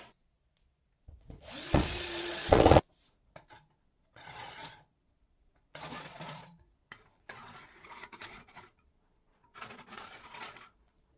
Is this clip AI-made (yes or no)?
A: yes